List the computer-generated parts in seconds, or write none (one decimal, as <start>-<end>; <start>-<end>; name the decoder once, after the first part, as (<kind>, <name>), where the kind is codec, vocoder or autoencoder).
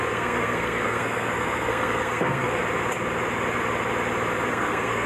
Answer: 0.0-2.6 (codec, SNAC); 4.5-5.1